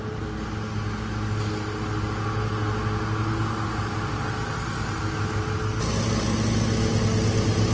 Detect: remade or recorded recorded